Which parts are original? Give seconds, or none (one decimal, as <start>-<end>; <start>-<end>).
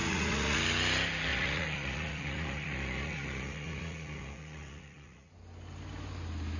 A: 0.6-1.3; 5.3-6.6